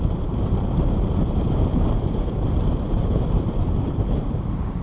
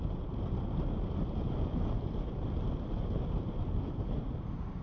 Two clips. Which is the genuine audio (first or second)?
second